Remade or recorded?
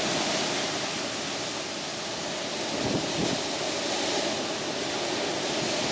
recorded